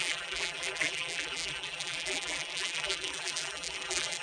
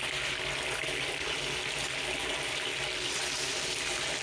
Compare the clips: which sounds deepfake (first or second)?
first